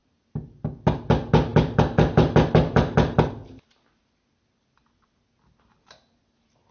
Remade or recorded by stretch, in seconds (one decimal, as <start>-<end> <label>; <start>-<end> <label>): 0.0-6.7 recorded